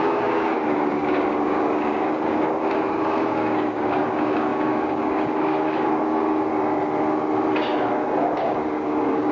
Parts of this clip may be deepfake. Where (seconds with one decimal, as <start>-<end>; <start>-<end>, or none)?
0.0-6.5; 8.2-9.3